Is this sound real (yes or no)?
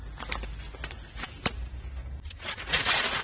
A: yes